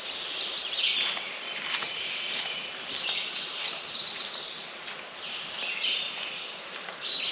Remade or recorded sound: recorded